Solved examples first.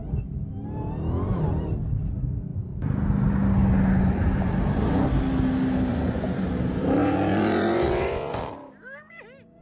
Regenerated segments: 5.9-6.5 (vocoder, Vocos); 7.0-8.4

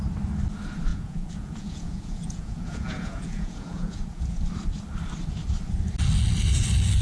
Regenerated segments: 0.9-4.4 (vocoder, Vocos)

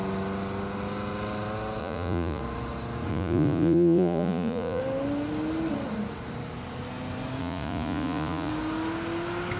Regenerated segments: 1.8-2.4 (vocoder, Vocos); 3.1-4.8; 7.4-8.5